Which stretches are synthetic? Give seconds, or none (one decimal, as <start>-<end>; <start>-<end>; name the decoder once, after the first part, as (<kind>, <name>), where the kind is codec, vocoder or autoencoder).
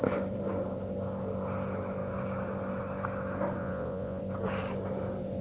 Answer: 3.6-4.2 (vocoder, Vocos)